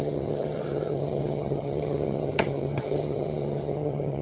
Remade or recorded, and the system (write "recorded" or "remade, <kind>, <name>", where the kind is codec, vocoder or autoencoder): remade, vocoder, HiFi-GAN